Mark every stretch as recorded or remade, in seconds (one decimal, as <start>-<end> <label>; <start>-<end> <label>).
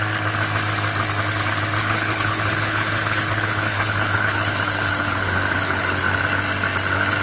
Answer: 0.0-1.8 recorded; 1.8-6.0 remade; 6.0-7.2 recorded